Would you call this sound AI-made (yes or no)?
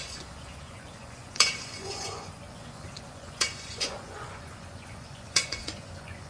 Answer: yes